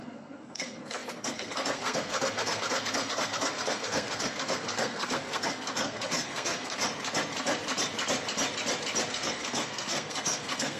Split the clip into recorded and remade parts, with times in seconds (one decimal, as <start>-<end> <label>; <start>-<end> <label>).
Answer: 0.0-6.8 remade; 6.8-9.1 recorded; 9.1-10.8 remade